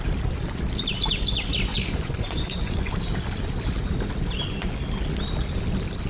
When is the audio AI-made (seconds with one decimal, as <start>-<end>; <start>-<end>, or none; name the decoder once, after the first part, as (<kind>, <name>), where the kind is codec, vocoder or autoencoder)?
1.7-2.9 (vocoder, Vocos)